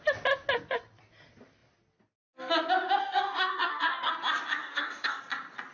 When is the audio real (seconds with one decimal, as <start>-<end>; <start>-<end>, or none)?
0.0-3.0; 4.1-4.6; 5.2-5.7